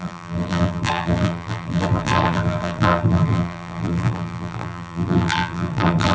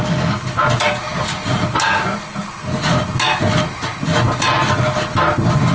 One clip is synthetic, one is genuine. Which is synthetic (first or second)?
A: first